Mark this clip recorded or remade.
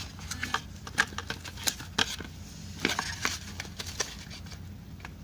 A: recorded